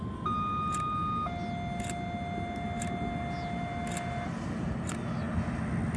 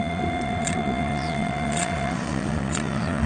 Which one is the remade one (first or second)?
second